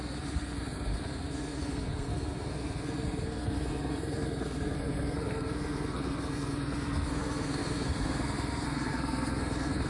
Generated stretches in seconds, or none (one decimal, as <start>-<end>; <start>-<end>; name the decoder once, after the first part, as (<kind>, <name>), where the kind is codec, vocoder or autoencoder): 0.0-9.9 (codec, SNAC)